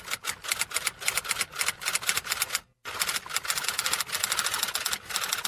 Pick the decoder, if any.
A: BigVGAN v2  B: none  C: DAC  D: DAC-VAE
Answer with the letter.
B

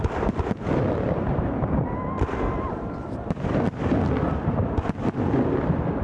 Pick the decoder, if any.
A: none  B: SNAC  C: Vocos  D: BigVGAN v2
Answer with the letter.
A